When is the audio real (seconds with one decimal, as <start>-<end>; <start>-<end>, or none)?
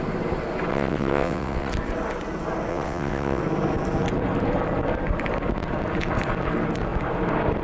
0.0-0.7; 1.7-2.7; 3.4-7.6